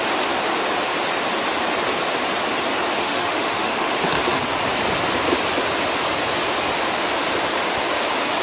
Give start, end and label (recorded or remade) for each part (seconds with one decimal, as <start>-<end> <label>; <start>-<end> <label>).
0.0-3.0 recorded; 3.0-3.9 remade; 3.9-8.4 recorded